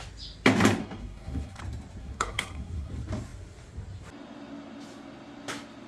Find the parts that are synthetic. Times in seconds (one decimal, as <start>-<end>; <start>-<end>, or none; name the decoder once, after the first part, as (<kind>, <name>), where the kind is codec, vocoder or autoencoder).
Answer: 0.8-1.6 (codec, SNAC); 2.0-2.9